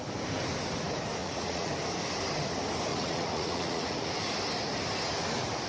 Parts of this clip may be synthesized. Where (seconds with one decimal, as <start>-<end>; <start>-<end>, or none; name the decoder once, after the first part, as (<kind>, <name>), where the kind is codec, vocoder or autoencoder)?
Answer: 1.2-1.7 (vocoder, Vocos); 2.9-4.1